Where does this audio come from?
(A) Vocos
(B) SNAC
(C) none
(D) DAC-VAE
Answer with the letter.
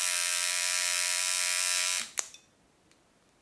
C